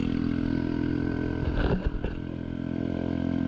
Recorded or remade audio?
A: remade